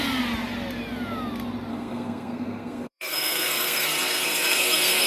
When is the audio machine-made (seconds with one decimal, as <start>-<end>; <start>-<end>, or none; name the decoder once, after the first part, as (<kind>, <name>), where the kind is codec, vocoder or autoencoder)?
1.7-5.1 (codec, SNAC)